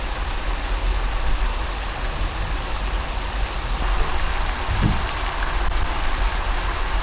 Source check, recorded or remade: recorded